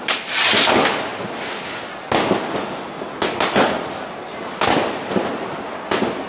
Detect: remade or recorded recorded